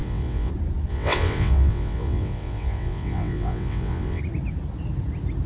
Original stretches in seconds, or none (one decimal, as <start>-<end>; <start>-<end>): 0.5-0.9; 4.2-5.5